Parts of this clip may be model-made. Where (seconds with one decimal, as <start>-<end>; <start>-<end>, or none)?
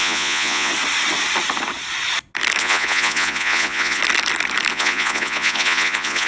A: 0.0-0.7; 2.6-4.0; 4.7-6.3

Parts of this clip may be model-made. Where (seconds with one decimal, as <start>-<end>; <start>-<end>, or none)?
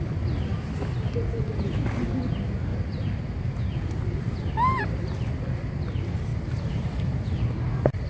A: 2.7-5.4; 6.3-7.5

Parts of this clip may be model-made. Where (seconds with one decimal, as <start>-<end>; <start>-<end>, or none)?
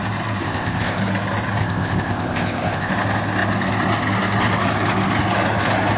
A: 0.4-1.0; 1.6-2.9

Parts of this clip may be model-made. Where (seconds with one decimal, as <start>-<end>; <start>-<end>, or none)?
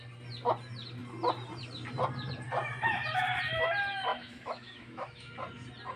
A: 4.1-5.3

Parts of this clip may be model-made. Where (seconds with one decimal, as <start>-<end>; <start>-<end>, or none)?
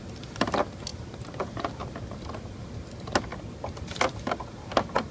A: 0.9-1.9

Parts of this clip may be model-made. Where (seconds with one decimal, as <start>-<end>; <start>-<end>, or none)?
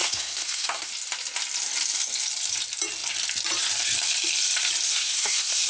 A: 0.0-0.9; 4.9-5.7